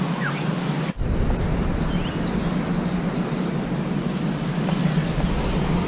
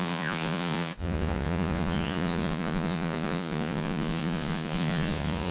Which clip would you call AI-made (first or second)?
second